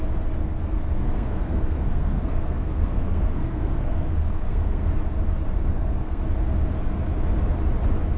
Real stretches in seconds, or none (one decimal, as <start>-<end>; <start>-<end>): 0.0-0.4; 4.9-5.7; 6.2-8.2